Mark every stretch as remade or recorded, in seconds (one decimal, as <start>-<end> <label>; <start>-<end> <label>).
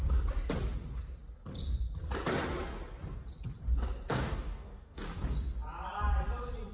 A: 0.0-4.1 recorded; 4.1-5.0 remade; 5.0-6.7 recorded